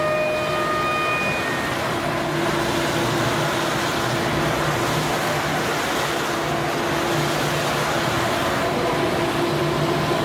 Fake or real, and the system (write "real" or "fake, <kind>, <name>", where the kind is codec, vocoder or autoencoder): real